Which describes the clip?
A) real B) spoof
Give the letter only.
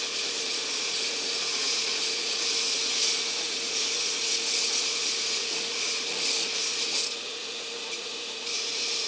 B